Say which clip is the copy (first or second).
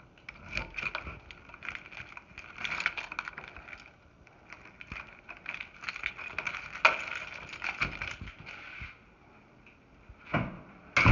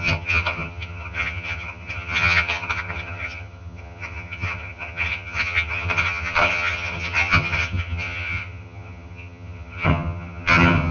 second